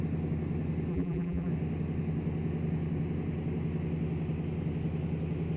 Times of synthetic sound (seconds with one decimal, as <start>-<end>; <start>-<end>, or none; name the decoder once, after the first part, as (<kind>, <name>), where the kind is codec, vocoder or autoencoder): 0.9-1.5 (vocoder, BigVGAN v2)